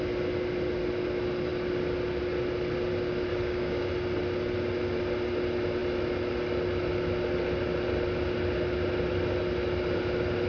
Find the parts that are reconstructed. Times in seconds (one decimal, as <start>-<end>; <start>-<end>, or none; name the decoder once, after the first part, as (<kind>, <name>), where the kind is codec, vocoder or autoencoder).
3.3-3.9 (codec, DAC)